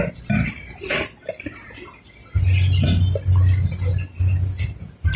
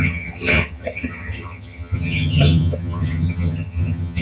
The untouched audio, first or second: first